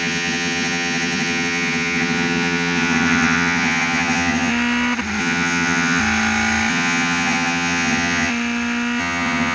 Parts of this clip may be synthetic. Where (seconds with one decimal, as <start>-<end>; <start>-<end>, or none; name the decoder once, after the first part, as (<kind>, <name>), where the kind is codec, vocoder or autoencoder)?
0.0-4.5 (vocoder, HiFi-GAN); 5.2-6.0; 6.7-8.3; 9.0-9.5